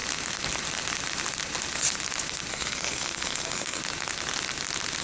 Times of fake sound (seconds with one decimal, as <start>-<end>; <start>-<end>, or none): 2.5-3.8